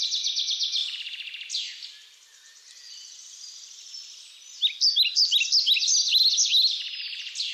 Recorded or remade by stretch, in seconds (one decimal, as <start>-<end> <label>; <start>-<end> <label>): 0.0-7.5 recorded